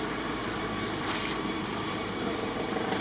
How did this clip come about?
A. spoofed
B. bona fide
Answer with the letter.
A